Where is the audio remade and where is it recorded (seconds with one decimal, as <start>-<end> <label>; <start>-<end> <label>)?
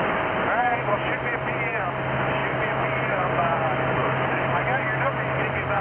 0.0-4.0 recorded; 4.0-4.5 remade; 4.5-5.8 recorded